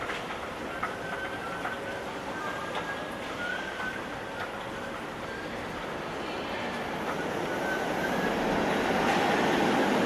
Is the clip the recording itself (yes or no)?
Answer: yes